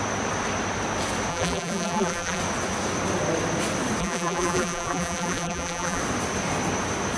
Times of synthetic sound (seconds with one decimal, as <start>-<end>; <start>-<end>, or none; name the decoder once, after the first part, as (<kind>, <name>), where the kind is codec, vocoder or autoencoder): 1.3-2.4 (vocoder, BigVGAN v2); 4.0-6.0